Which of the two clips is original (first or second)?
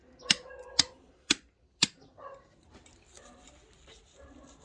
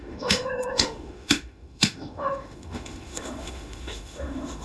first